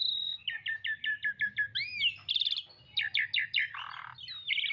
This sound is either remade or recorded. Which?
recorded